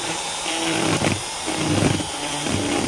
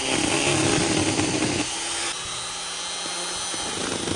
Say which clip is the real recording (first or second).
second